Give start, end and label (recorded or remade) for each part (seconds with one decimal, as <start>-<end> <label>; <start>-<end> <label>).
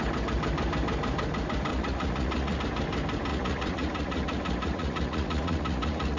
0.0-1.7 recorded; 1.7-2.6 remade; 2.6-3.3 recorded; 3.3-6.2 remade